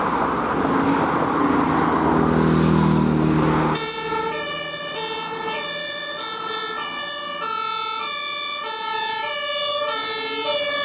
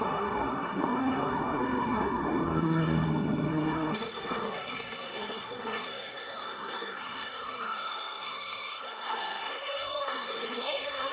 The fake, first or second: second